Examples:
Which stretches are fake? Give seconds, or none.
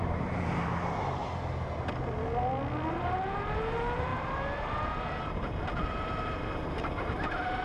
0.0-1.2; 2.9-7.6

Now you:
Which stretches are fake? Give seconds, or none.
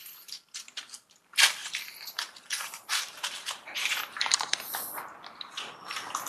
1.6-4.7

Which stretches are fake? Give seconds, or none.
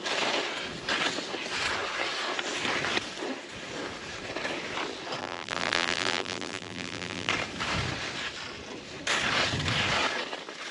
5.2-7.3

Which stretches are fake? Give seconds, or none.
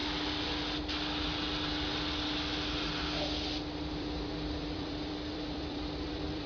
3.9-6.5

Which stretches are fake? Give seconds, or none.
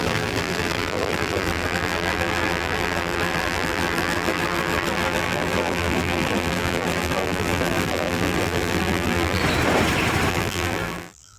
0.0-9.4; 10.3-11.4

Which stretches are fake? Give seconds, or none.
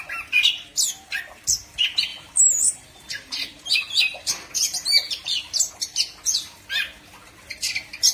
2.1-5.7